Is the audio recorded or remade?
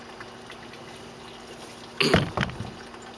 recorded